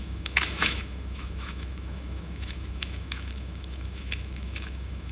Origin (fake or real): fake